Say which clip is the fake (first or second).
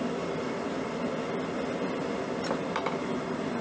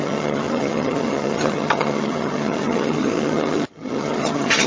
second